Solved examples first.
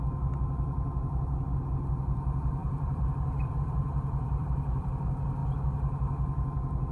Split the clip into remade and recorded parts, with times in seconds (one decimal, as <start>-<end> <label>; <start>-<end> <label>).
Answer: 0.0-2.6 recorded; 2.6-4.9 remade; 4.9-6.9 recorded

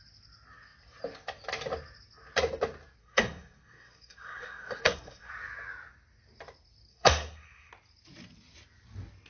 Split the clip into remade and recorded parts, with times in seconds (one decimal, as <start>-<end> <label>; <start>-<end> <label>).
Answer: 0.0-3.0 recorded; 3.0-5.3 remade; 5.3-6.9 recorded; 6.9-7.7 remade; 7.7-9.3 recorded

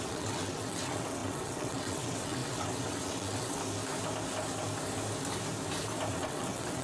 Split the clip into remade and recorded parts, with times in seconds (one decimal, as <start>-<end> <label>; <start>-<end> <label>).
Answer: 0.0-3.6 remade; 3.6-6.1 recorded; 6.1-6.8 remade

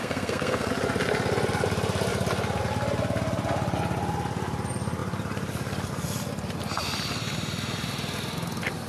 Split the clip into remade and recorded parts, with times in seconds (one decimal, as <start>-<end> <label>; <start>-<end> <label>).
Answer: 0.0-0.7 remade; 0.7-8.9 recorded

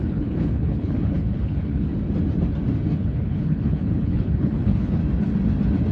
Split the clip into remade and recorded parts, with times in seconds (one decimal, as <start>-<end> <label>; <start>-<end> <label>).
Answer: 0.0-1.9 remade; 1.9-2.9 recorded; 2.9-5.0 remade; 5.0-5.9 recorded

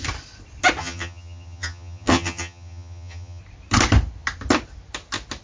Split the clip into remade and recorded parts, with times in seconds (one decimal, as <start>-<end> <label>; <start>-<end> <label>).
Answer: 0.0-0.8 recorded; 0.8-3.4 remade; 3.4-5.4 recorded

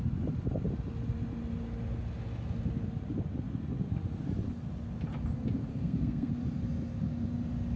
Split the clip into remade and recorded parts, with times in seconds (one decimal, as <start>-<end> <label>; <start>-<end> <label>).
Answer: 0.0-5.7 recorded; 5.7-6.3 remade; 6.3-7.8 recorded

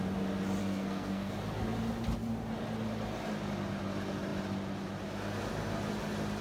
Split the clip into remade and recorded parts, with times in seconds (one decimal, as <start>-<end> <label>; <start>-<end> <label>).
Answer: 0.0-0.6 recorded; 0.6-1.3 remade; 1.3-6.4 recorded